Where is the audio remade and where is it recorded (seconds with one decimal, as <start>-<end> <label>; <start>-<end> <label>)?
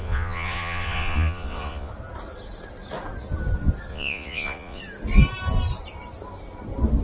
0.0-1.9 remade; 1.9-3.9 recorded; 3.9-4.8 remade; 4.8-7.0 recorded